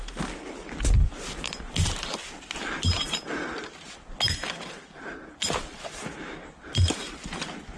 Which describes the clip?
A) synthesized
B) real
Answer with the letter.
B